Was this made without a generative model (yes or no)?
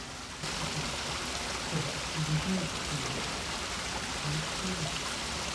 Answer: yes